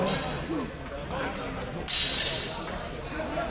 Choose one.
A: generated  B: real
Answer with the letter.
B